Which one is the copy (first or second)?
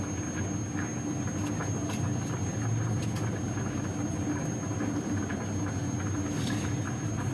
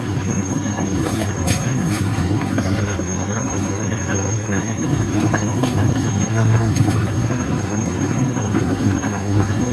second